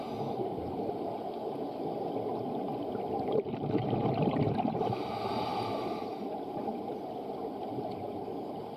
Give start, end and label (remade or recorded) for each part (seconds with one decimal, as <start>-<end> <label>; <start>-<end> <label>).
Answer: 0.0-8.8 recorded